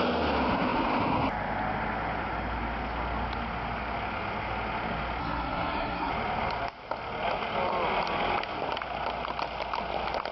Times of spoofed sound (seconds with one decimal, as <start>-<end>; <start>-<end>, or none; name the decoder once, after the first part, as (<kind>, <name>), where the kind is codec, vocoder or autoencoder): 5.2-6.1 (codec, SNAC)